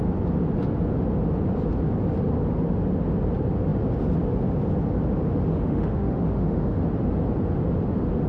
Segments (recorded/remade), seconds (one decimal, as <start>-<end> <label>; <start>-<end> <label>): 0.0-5.5 recorded; 5.5-6.8 remade; 6.8-8.3 recorded